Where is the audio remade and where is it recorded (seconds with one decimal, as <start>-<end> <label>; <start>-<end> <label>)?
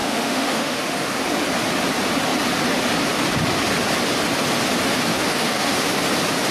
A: 0.0-1.2 remade; 1.2-5.1 recorded; 5.1-6.0 remade; 6.0-6.5 recorded